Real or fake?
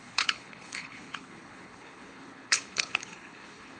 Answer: fake